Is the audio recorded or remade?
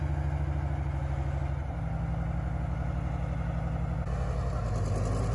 recorded